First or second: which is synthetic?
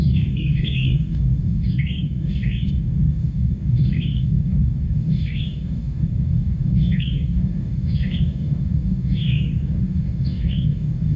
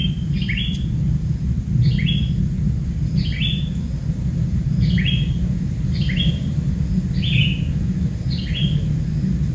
first